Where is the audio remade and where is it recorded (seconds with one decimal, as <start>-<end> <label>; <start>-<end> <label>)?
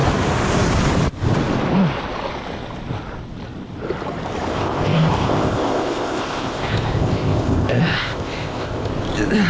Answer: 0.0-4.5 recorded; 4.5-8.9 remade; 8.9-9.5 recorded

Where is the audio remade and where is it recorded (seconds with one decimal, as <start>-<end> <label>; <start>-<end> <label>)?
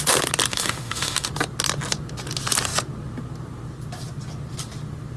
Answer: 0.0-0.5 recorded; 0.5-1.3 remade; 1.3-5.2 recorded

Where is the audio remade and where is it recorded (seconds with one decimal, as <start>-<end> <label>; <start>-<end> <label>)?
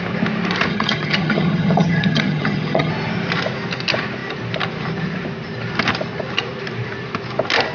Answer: 0.0-0.7 recorded; 0.7-2.9 remade; 2.9-7.7 recorded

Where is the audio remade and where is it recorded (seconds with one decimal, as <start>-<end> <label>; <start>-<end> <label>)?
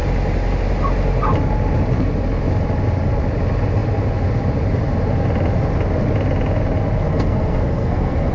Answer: 0.0-7.1 recorded; 7.1-8.3 remade